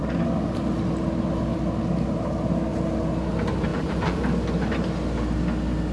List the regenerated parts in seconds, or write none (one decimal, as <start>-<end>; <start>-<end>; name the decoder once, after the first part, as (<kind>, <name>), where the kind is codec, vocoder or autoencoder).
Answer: 3.7-4.2 (vocoder, BigVGAN v2)